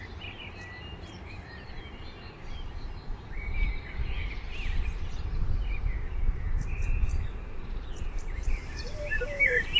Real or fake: fake